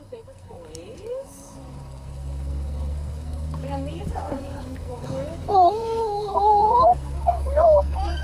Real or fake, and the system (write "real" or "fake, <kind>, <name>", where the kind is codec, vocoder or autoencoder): fake, codec, SNAC